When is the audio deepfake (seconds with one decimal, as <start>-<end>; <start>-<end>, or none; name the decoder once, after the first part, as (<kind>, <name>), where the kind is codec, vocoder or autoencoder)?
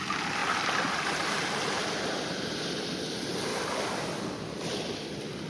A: none